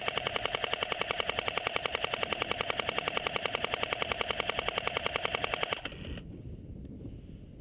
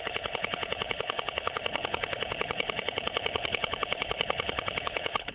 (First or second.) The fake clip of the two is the second